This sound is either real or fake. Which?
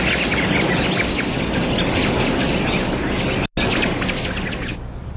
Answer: real